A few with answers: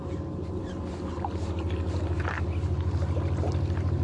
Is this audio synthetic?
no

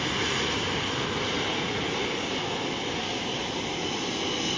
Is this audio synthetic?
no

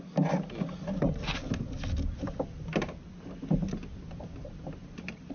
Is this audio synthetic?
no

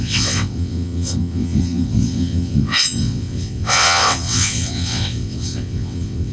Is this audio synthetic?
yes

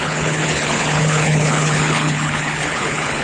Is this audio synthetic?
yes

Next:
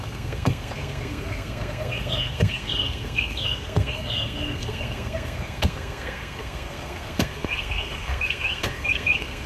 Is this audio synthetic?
yes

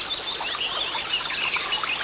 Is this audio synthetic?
no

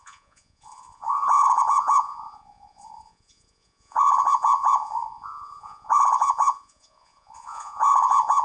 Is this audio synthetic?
yes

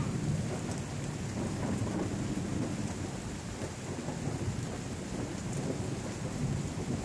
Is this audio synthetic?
no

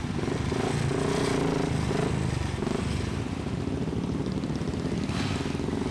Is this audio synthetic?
no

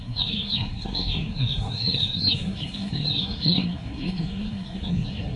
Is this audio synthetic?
yes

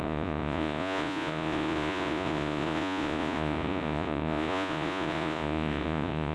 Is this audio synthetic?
yes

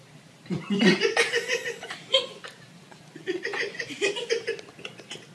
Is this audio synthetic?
no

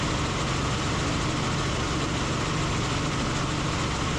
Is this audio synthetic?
no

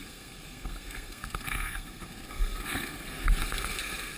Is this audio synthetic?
yes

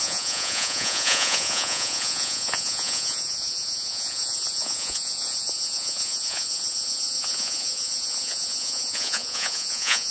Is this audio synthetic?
yes